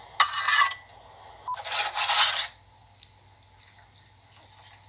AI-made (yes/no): no